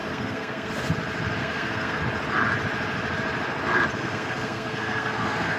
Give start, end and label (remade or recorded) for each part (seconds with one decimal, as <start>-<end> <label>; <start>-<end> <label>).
0.0-0.7 remade; 0.7-1.4 recorded; 1.4-2.0 remade; 2.0-4.0 recorded; 4.0-5.6 remade